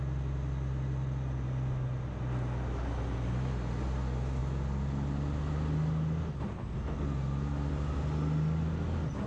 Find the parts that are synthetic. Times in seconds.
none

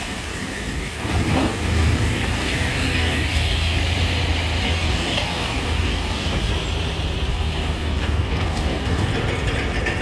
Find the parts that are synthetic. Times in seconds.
0.0-3.8 (codec, DAC); 4.6-6.5; 7.3-9.1